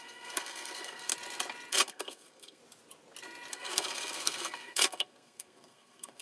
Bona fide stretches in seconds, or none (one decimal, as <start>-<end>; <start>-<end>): 1.1-1.7; 2.6-3.5